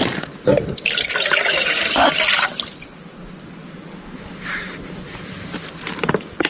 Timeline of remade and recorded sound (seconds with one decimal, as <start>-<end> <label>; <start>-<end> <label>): 0.0-3.6 recorded; 3.6-6.5 remade